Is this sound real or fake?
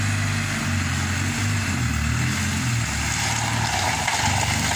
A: real